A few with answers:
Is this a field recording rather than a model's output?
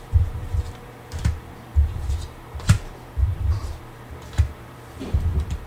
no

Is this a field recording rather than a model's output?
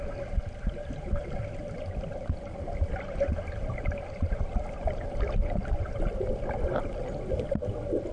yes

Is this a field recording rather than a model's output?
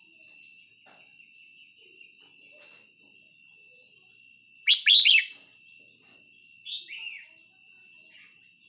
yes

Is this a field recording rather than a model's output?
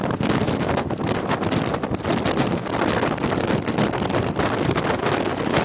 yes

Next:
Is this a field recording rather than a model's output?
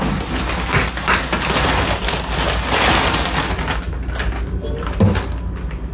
yes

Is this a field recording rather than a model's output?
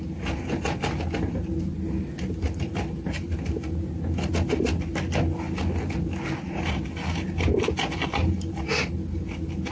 yes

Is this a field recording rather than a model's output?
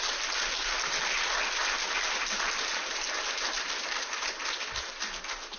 yes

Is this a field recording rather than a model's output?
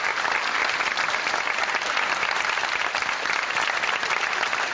yes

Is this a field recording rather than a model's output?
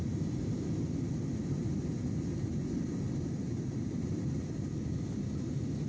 no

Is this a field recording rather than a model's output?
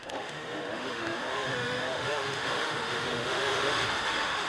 no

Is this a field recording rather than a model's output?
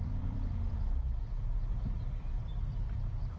no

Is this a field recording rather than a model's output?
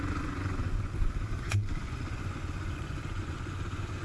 no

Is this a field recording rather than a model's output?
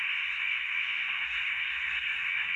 no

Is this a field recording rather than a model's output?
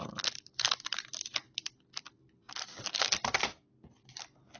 yes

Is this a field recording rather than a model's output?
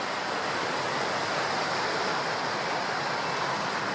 yes